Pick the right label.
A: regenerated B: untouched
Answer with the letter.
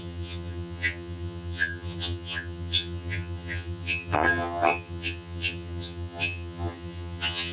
A